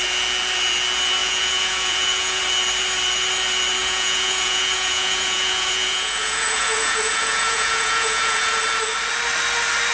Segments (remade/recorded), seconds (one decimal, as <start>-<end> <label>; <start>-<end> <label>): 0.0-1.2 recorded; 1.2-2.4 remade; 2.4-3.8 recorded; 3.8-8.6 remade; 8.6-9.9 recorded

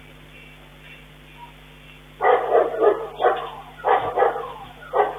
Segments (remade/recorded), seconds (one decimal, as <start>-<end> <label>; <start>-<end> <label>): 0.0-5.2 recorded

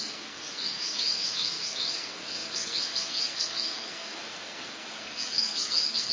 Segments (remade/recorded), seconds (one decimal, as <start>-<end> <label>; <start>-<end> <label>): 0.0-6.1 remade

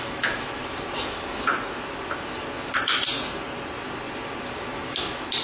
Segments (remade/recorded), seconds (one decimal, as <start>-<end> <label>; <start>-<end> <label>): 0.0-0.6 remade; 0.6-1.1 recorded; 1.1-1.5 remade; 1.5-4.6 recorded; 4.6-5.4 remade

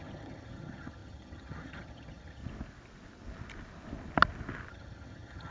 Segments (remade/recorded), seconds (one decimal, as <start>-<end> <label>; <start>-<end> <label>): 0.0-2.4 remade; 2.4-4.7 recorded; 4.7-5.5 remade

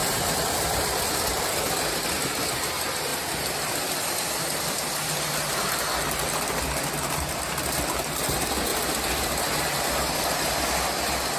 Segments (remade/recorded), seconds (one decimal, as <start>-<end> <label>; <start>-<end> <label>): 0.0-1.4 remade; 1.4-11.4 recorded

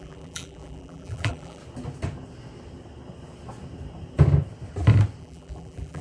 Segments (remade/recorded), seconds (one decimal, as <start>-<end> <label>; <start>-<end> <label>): 0.0-1.6 remade; 1.6-5.2 recorded; 5.2-6.0 remade

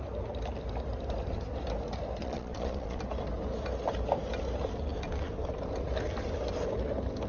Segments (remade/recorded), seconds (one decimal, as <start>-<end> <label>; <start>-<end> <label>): 0.0-2.2 recorded; 2.2-3.0 remade; 3.0-7.3 recorded